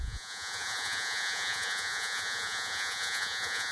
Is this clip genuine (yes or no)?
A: no